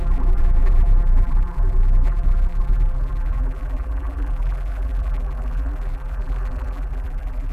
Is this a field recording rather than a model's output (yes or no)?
no